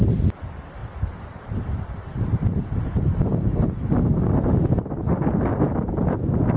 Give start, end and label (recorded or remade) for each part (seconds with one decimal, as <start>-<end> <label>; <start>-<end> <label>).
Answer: 0.0-6.6 recorded